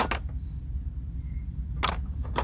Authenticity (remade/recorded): recorded